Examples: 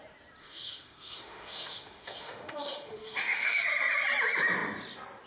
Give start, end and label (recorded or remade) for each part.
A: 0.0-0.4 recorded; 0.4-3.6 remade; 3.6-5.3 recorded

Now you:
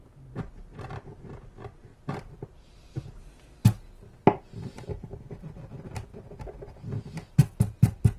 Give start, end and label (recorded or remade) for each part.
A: 0.0-1.9 recorded; 1.9-3.2 remade; 3.2-8.2 recorded

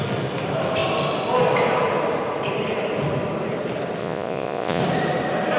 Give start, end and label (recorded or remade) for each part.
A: 0.0-4.0 recorded; 4.0-4.8 remade; 4.8-5.6 recorded

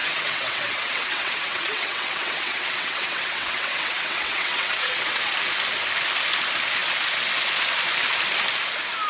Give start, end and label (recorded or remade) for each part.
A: 0.0-5.2 remade; 5.2-9.1 recorded

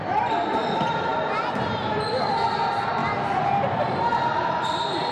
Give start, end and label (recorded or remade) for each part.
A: 0.0-5.1 recorded

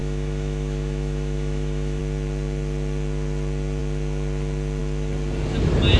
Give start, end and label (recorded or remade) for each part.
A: 0.0-2.0 remade; 2.0-6.0 recorded